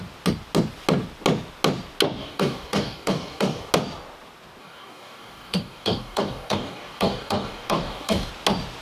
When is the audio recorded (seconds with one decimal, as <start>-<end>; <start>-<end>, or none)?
0.0-2.2; 3.7-4.6; 8.3-8.8